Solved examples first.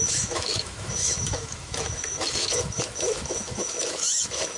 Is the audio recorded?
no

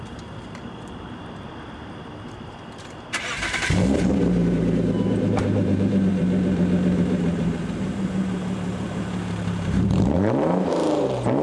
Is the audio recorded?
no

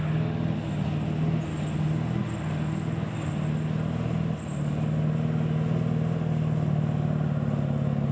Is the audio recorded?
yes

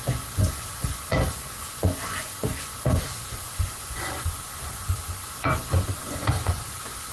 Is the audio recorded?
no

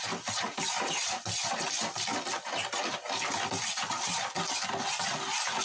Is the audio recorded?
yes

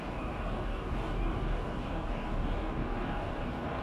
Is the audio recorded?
no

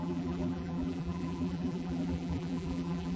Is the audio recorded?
no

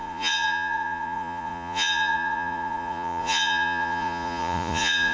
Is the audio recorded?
no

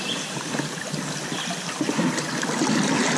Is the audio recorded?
yes